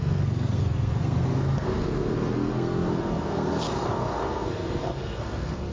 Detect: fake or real fake